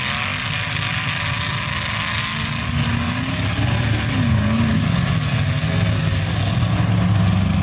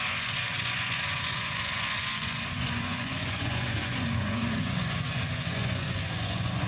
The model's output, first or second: second